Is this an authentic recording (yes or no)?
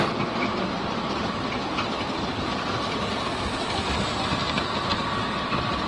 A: yes